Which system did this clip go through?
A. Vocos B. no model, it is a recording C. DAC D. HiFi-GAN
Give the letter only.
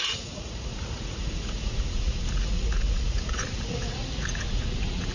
A